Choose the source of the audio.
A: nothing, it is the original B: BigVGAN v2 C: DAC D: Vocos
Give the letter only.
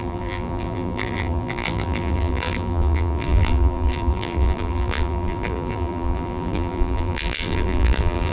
B